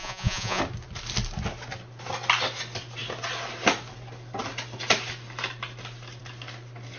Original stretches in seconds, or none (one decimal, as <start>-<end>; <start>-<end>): 0.6-7.0